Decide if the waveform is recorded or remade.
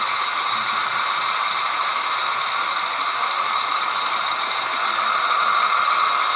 recorded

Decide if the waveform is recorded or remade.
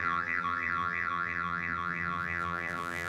remade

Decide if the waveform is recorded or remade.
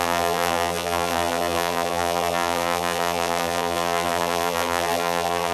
remade